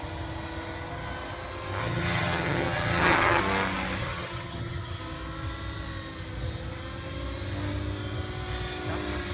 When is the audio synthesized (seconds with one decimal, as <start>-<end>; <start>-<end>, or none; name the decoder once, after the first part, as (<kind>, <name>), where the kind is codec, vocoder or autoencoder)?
1.8-3.4 (vocoder, HiFi-GAN); 4.0-5.0